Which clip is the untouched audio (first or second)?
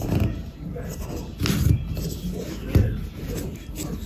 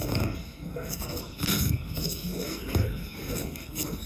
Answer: first